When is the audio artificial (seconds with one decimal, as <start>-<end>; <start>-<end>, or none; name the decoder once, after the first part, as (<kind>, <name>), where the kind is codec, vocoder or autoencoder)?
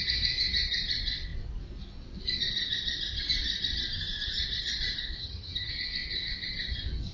5.2-5.7 (vocoder, HiFi-GAN)